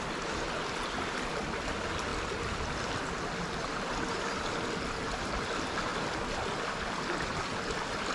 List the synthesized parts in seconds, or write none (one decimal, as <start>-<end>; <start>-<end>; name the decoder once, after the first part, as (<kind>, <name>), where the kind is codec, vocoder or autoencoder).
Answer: none